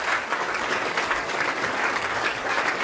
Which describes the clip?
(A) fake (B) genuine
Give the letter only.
A